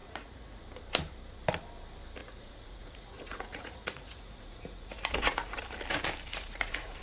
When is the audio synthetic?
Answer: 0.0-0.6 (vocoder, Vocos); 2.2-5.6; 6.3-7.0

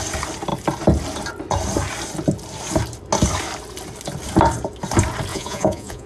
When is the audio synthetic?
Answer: 5.3-6.1 (vocoder, Vocos)

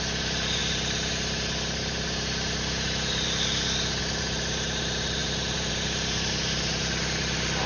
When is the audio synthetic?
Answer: none

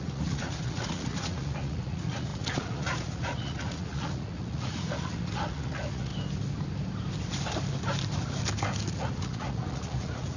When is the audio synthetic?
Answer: 0.0-6.1 (vocoder, Vocos); 8.9-10.4

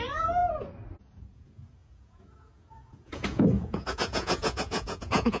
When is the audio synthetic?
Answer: 0.0-0.4 (vocoder, Vocos); 1.0-5.4

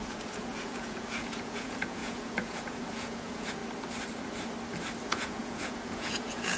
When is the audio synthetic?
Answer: 0.0-3.6 (vocoder, Vocos); 5.0-6.6

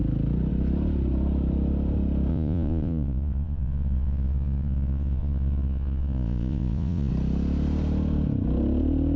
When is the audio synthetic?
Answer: 2.3-7.1 (vocoder, Vocos)